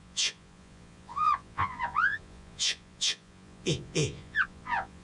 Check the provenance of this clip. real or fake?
fake